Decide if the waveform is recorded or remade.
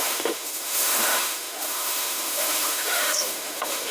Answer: remade